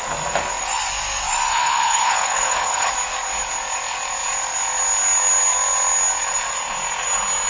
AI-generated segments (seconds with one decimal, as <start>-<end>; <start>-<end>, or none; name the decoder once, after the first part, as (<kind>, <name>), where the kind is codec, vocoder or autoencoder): 1.5-2.9 (codec, HILCodec)